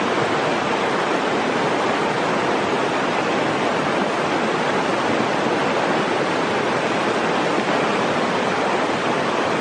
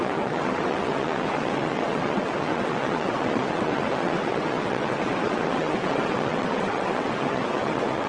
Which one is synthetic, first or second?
second